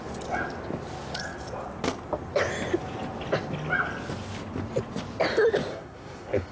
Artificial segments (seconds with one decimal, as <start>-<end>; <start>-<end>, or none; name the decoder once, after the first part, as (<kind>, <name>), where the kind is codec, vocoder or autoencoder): 5.7-6.5 (codec, SNAC)